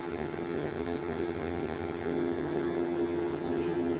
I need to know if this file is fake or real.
fake